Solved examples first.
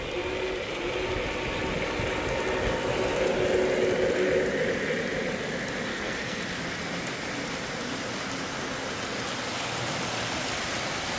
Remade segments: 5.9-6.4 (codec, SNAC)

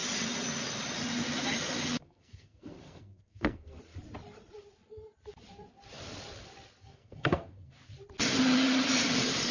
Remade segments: 2.0-3.8 (codec, SNAC); 6.8-7.7

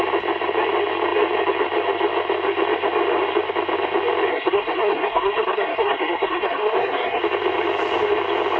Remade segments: 4.3-7.2 (codec, SNAC)

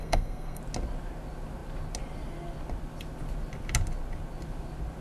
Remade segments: 0.0-0.6 (codec, SNAC)

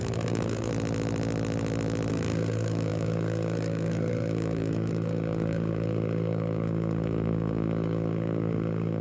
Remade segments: 0.0-0.7 (codec, SNAC); 2.1-9.0

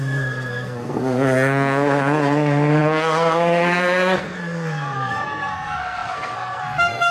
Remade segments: 0.0-7.1 (codec, SNAC)

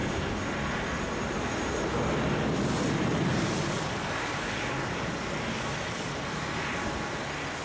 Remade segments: none

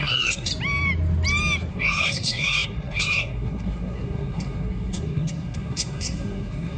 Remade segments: 0.0-0.5 (codec, SNAC); 1.7-6.8